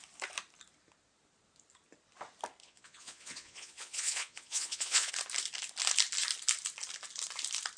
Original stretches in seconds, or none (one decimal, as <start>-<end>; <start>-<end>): 0.0-2.6; 5.1-7.8